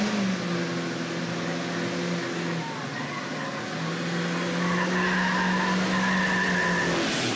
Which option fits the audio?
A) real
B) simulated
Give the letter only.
A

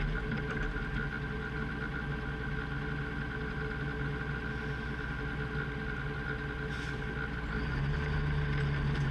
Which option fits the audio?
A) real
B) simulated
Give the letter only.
A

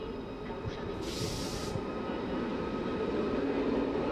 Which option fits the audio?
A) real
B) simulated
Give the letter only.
A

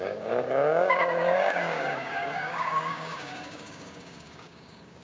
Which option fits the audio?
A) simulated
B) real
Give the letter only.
A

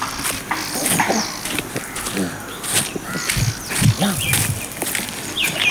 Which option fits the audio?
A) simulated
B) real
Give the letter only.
B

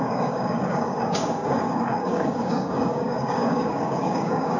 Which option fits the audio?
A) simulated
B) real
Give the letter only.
A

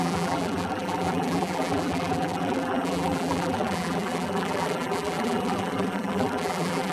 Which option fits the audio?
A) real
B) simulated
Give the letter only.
B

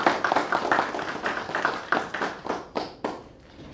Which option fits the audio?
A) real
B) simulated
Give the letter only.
A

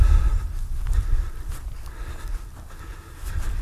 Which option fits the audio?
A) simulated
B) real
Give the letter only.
B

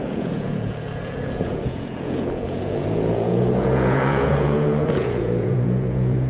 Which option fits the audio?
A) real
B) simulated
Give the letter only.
B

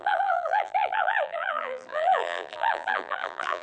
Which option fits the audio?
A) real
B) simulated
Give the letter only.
B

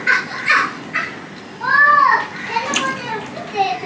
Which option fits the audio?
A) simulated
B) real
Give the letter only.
B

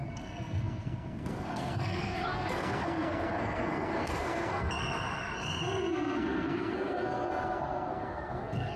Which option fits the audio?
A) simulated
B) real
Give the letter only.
A